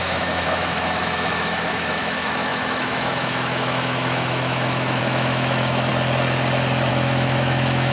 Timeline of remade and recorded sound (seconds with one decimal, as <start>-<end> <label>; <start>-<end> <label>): 0.0-5.9 remade; 5.9-6.9 recorded; 6.9-7.9 remade